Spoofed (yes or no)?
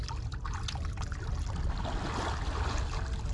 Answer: no